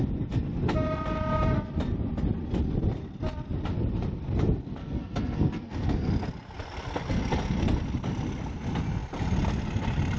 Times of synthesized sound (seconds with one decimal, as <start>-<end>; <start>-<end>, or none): 4.8-6.1

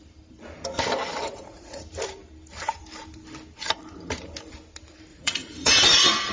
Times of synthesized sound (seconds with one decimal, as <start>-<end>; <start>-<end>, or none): 1.2-1.8; 5.1-6.3

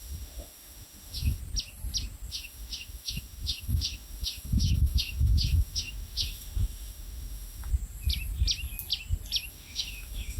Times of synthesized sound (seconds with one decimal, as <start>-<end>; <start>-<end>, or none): 0.0-1.4; 2.3-7.7; 9.5-10.4

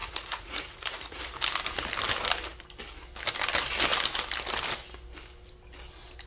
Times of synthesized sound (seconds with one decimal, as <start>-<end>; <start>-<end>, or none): 0.0-1.2

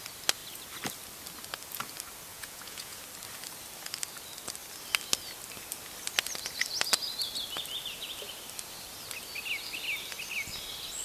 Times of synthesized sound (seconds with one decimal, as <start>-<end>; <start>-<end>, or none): 2.3-3.0

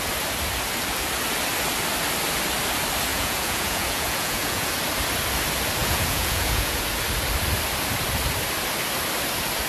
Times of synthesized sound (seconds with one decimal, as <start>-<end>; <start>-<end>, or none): 3.1-4.7; 5.8-6.8

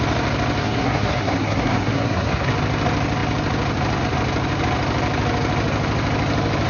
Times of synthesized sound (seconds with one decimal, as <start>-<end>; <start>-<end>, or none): 0.6-2.5